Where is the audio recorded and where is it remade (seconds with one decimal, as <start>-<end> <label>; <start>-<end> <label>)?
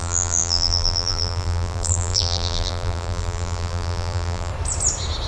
0.0-4.5 remade; 4.5-5.3 recorded